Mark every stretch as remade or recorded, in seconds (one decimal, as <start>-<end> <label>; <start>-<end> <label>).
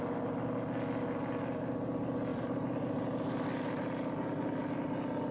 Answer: 0.0-2.3 recorded; 2.3-3.0 remade; 3.0-5.3 recorded